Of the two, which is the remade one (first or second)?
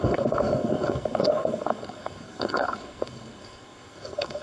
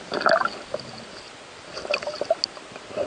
first